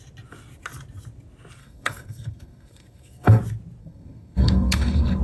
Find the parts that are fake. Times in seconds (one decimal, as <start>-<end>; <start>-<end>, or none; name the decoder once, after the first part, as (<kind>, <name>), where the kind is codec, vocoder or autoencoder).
1.6-3.4 (codec, SNAC); 3.8-5.2